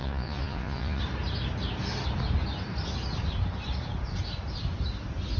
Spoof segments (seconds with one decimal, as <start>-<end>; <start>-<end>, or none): 0.0-1.0